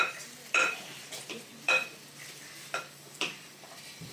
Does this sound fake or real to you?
fake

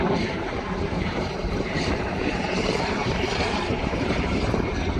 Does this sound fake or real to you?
fake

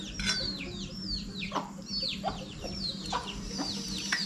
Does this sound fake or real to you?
fake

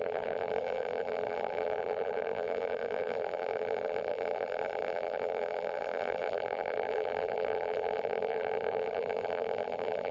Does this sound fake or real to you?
fake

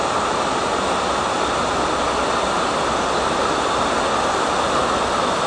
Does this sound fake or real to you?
real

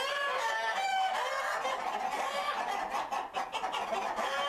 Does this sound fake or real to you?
real